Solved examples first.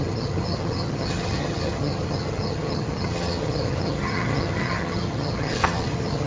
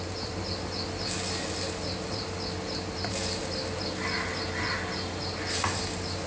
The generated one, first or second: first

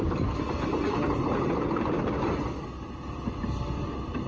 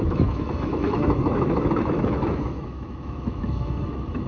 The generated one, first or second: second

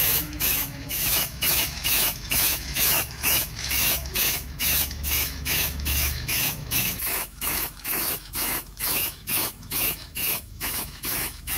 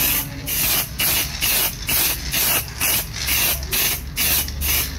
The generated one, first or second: first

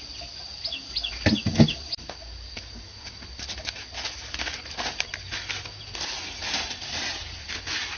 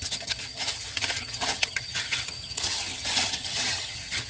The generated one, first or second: second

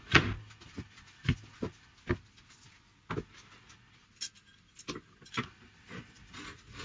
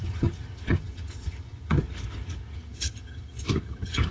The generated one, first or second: second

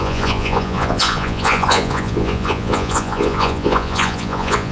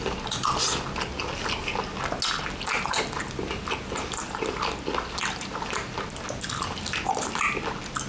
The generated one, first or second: first